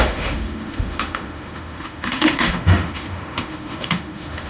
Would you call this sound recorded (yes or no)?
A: no